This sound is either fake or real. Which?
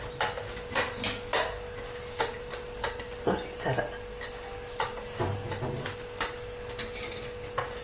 real